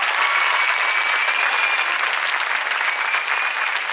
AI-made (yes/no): no